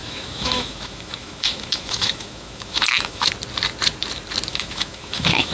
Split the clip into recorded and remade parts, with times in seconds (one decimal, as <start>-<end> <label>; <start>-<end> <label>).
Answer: 0.0-3.3 remade; 3.3-4.5 recorded; 4.5-5.5 remade